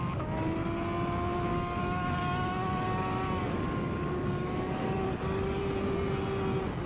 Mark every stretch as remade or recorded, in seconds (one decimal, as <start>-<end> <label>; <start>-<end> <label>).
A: 0.0-1.5 recorded; 1.5-5.6 remade; 5.6-6.9 recorded